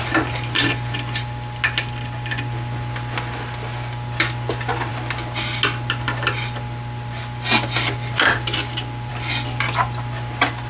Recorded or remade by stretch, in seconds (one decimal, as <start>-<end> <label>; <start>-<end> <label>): 0.0-10.7 recorded